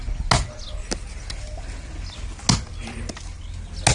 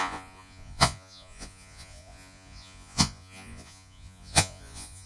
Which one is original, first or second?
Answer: first